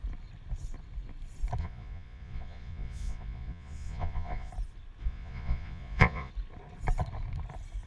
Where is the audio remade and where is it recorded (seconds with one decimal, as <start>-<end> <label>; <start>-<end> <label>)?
0.0-1.6 recorded; 1.6-4.5 remade; 4.5-5.0 recorded; 5.0-6.3 remade; 6.3-7.9 recorded